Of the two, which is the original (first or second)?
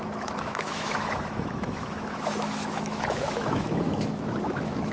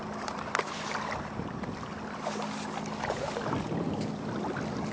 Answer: second